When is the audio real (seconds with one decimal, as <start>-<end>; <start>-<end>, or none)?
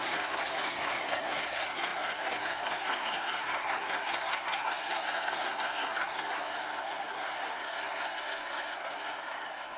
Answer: none